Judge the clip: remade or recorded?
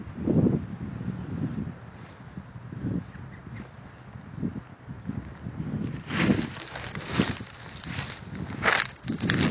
remade